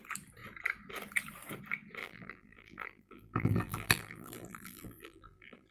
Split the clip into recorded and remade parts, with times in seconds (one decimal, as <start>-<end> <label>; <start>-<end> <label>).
0.0-2.0 recorded; 2.0-5.7 remade